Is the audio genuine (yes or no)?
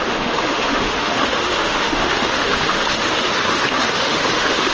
no